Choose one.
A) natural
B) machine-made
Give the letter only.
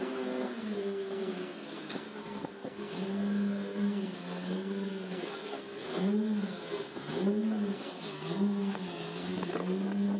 B